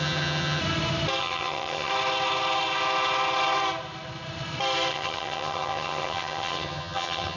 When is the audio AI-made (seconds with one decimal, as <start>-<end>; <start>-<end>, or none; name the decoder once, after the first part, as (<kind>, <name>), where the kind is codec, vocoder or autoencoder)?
0.0-0.6 (vocoder, HiFi-GAN); 1.2-1.9; 4.9-7.4